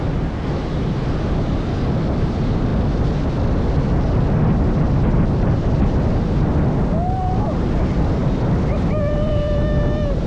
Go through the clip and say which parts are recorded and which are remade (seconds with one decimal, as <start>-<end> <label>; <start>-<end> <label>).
0.0-2.7 remade; 2.7-7.8 recorded; 7.8-10.3 remade